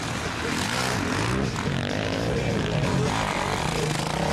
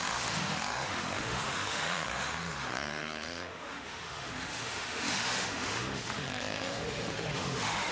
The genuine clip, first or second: first